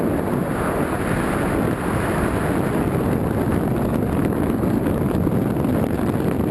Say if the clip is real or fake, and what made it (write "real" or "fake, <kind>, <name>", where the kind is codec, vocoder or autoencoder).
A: real